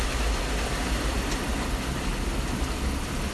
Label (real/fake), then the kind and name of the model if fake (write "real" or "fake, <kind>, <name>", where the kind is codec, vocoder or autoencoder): real